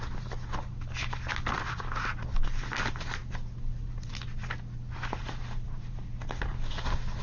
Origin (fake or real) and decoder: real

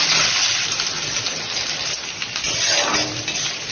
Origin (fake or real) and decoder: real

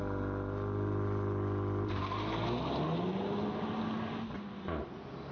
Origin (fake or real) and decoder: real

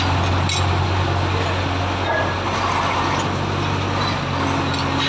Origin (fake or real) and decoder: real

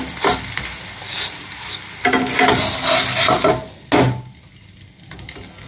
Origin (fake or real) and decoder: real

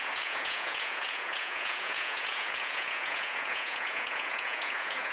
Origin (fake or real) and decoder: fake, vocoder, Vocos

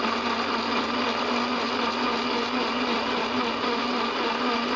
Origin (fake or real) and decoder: real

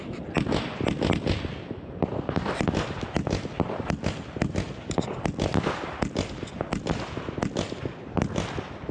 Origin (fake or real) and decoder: real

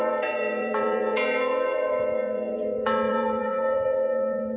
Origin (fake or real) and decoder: fake, vocoder, Vocos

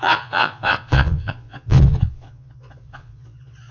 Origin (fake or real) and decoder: fake, vocoder, Vocos